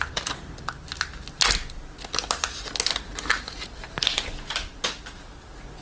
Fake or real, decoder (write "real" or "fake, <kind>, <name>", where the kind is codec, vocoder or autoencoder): real